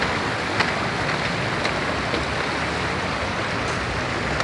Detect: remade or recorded recorded